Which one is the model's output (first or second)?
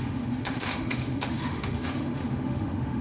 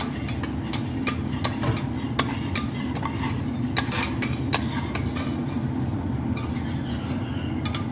first